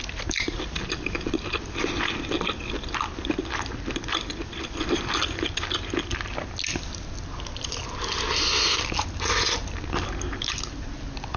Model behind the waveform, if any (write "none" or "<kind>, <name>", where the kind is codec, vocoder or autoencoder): none